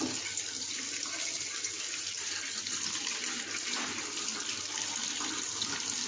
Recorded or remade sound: recorded